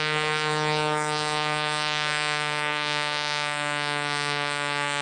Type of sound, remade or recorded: remade